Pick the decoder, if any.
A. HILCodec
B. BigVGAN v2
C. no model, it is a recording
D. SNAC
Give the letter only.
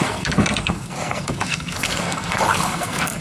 D